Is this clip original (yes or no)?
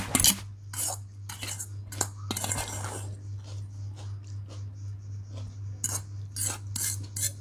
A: yes